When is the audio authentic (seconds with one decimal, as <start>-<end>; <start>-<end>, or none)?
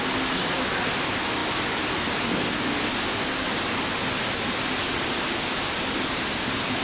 0.0-6.8